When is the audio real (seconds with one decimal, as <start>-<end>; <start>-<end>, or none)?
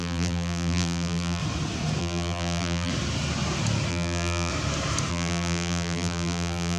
1.4-2.0; 2.9-3.9; 4.5-5.1